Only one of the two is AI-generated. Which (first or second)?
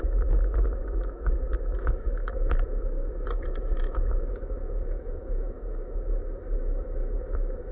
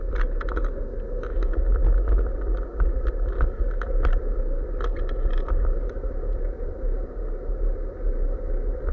first